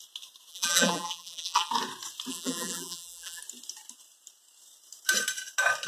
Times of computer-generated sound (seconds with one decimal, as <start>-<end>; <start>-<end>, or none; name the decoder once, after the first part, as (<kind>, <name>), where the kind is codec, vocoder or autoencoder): 0.5-1.7 (vocoder, BigVGAN v2); 2.3-3.4